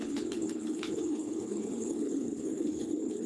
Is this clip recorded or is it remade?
remade